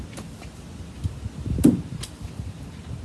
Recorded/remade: recorded